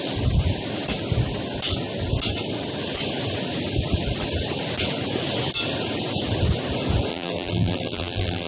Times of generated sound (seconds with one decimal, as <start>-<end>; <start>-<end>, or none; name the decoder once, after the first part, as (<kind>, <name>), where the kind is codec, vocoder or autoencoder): 7.1-8.5 (vocoder, BigVGAN v2)